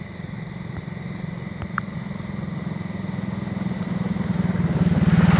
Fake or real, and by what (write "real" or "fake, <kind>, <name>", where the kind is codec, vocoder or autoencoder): real